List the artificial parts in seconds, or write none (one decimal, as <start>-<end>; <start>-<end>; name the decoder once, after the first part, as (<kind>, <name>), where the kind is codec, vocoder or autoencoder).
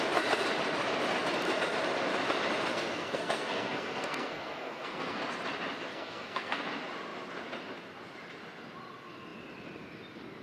2.7-5.2 (codec, SNAC); 5.9-6.6